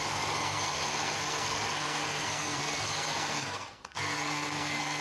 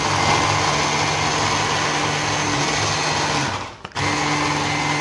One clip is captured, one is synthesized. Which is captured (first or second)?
second